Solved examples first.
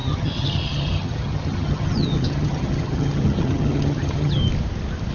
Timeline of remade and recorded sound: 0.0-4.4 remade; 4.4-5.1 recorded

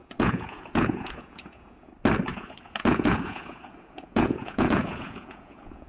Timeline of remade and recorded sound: 0.0-1.9 remade; 1.9-2.3 recorded; 2.3-5.9 remade

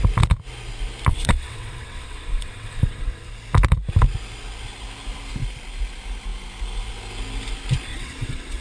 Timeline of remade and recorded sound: 0.0-1.1 recorded; 1.1-3.3 remade; 3.3-7.9 recorded; 7.9-8.6 remade

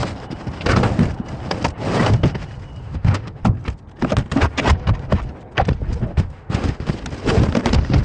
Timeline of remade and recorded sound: 0.0-2.8 recorded; 2.8-3.4 remade; 3.4-6.1 recorded; 6.1-6.9 remade; 6.9-8.0 recorded

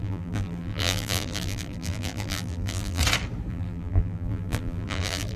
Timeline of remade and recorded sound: 0.0-3.0 remade; 3.0-3.5 recorded; 3.5-5.4 remade